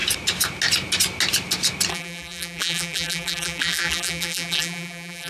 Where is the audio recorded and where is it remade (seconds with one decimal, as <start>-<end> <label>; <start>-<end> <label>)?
0.0-1.9 recorded; 1.9-5.3 remade